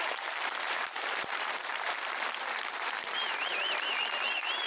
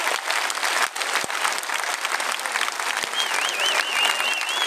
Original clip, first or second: second